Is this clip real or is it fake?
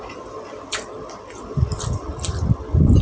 real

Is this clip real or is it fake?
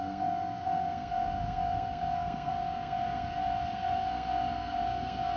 fake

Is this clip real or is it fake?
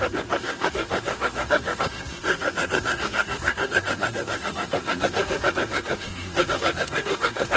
fake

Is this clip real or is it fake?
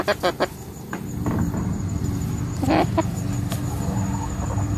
real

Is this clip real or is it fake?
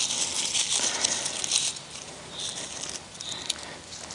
real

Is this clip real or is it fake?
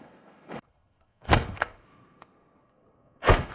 fake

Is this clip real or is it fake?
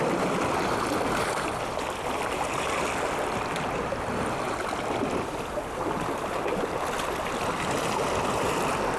real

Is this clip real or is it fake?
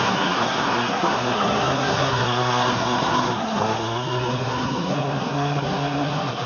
fake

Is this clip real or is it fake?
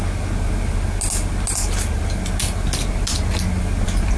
real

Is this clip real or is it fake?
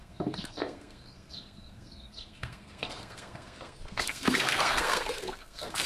fake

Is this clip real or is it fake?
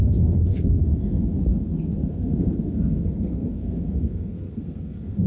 fake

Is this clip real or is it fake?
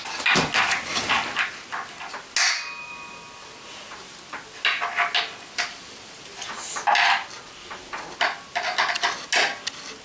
real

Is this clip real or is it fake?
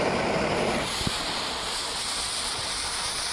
real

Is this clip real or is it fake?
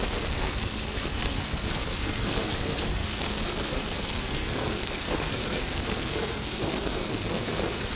fake